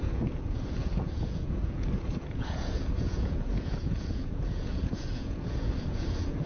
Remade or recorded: remade